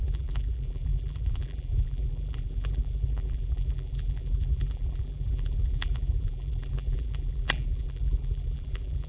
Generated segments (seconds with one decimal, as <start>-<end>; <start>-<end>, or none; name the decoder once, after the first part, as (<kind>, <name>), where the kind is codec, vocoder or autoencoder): 0.0-9.1 (vocoder, BigVGAN v2)